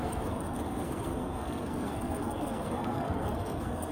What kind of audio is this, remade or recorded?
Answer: remade